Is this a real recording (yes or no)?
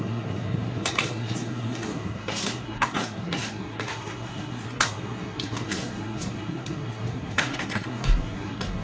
no